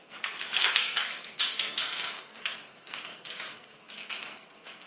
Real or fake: fake